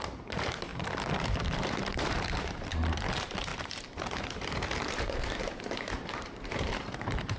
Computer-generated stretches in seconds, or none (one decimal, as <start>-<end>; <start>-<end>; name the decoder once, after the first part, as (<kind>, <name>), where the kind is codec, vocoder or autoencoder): 0.0-3.5 (vocoder, BigVGAN v2); 4.1-7.4